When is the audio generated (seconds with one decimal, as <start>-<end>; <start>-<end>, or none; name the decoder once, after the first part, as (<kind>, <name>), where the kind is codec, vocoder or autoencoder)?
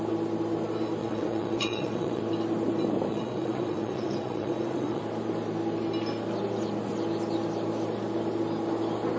1.0-2.2 (vocoder, WaveNeXt); 3.1-5.0